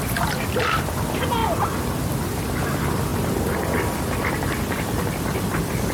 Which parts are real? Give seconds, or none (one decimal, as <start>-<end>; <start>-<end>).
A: 1.4-2.0